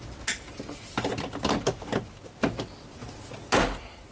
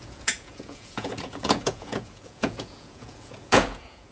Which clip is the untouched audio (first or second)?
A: first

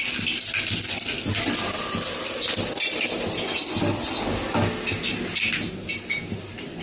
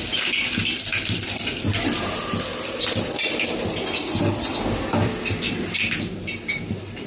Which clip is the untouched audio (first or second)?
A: first